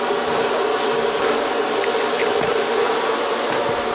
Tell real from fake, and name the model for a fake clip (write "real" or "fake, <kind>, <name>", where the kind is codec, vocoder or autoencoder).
fake, vocoder, BigVGAN v2